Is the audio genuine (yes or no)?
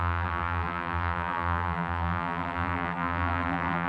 no